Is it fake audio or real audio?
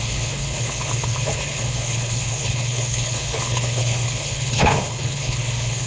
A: fake